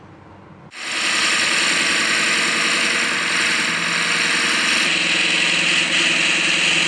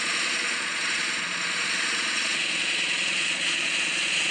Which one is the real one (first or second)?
first